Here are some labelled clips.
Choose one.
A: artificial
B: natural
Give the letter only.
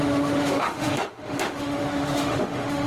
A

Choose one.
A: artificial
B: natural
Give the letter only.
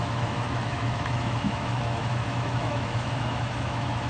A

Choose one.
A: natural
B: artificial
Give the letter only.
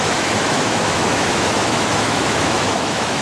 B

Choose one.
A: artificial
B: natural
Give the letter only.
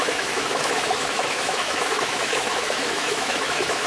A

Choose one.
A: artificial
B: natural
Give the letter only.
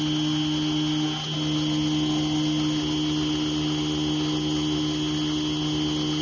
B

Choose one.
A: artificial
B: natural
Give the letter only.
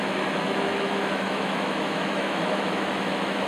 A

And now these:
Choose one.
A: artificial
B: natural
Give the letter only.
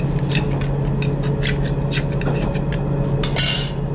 B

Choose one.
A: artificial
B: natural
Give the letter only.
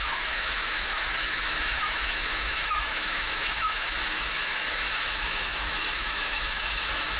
A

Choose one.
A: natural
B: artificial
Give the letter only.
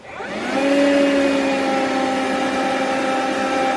A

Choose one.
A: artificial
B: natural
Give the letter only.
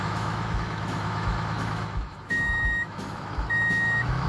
A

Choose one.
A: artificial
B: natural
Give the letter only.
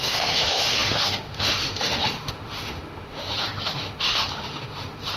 A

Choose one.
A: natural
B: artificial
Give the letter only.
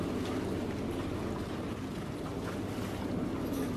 A